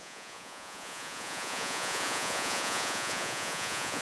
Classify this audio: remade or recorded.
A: remade